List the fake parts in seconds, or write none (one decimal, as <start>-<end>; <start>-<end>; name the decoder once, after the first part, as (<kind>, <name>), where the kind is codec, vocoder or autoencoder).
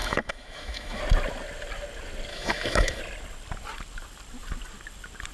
0.0-1.0 (autoencoder, DAC-VAE); 2.3-3.0